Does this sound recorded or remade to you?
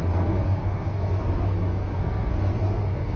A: remade